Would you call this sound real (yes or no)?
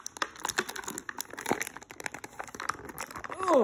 yes